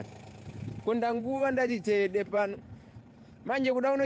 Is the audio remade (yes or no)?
yes